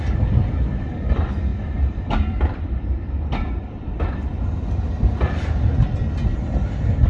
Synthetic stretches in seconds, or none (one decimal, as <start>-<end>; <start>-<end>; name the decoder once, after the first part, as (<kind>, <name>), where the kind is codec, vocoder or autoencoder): 1.5-3.9 (vocoder, BigVGAN v2); 6.3-7.1